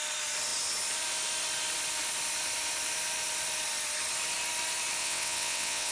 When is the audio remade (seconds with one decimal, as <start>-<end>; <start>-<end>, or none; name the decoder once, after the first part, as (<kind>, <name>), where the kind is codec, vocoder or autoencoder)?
5.0-5.9 (vocoder, WaveNeXt)